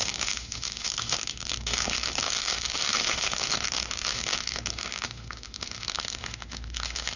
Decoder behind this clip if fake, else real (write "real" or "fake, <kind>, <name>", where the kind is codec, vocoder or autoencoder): fake, autoencoder, DAC-VAE